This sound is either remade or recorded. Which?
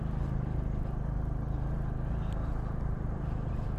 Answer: recorded